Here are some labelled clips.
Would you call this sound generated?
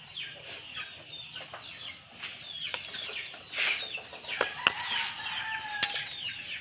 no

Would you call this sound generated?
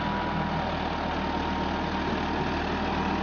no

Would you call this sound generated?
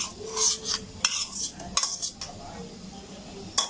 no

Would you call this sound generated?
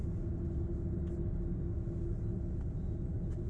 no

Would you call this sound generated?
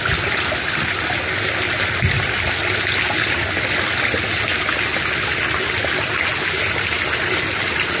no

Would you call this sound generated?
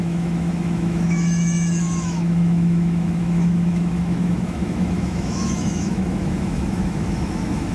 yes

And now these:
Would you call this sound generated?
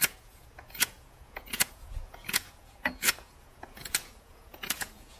yes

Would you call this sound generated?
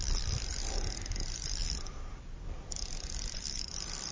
no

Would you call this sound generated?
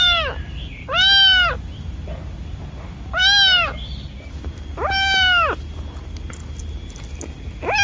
no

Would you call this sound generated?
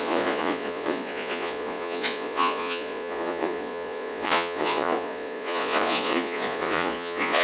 yes